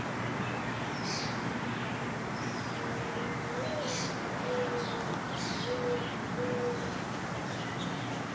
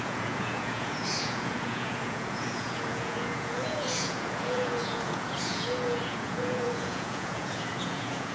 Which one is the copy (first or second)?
second